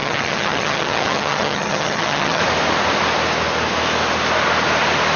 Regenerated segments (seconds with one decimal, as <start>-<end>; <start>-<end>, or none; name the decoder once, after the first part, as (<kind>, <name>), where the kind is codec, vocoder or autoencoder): 0.0-2.4 (vocoder, HiFi-GAN)